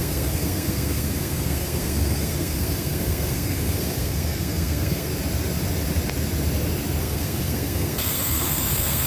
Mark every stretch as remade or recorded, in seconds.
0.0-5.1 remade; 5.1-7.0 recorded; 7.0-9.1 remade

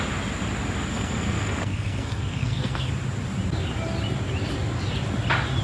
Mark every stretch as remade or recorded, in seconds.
0.0-0.9 recorded; 0.9-2.9 remade; 2.9-5.6 recorded